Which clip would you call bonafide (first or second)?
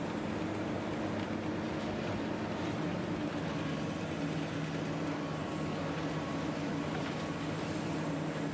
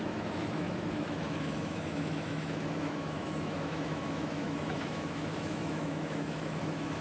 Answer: first